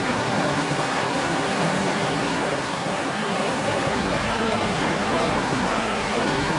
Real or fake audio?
fake